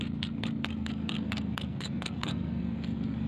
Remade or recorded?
remade